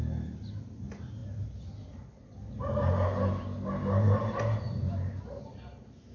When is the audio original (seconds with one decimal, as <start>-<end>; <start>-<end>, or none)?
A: 0.0-6.1